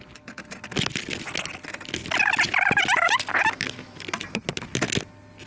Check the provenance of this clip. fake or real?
real